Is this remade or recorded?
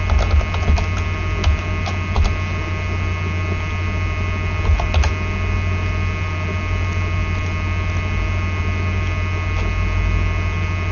recorded